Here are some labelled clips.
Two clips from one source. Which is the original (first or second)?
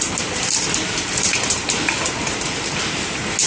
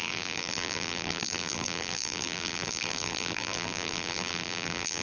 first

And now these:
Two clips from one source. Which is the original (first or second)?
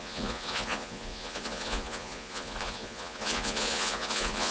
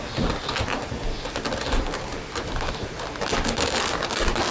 second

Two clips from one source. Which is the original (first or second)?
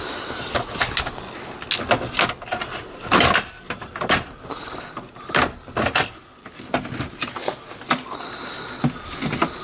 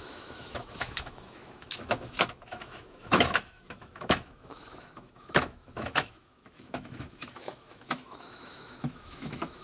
first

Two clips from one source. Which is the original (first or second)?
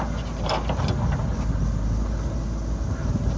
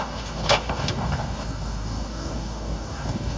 first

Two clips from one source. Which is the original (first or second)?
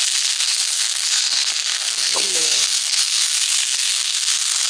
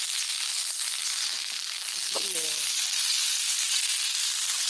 second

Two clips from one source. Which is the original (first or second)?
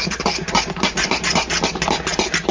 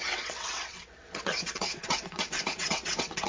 first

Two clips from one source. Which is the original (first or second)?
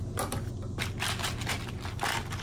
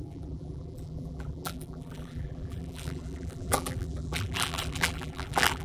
first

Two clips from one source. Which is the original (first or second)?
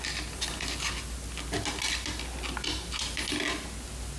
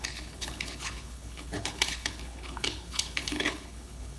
first